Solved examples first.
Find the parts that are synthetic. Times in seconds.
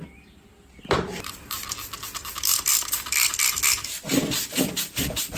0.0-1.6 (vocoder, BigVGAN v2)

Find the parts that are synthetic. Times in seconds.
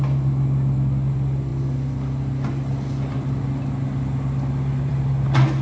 none